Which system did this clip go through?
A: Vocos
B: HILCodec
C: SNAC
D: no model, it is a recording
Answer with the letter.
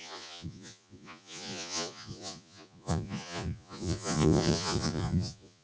A